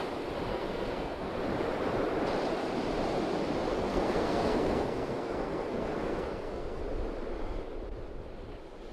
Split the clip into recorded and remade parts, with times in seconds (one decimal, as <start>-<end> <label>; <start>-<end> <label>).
0.0-0.5 recorded; 0.5-1.3 remade; 1.3-3.7 recorded; 3.7-6.8 remade; 6.8-8.9 recorded